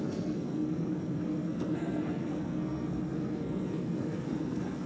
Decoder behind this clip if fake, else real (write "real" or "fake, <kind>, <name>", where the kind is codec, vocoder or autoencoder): fake, codec, SNAC